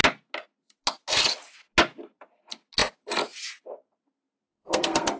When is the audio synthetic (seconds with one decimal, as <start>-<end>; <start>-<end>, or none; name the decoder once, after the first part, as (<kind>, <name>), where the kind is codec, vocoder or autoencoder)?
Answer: 4.5-5.2 (codec, SNAC)